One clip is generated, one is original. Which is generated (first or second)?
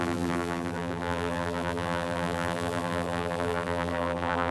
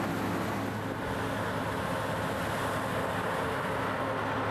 first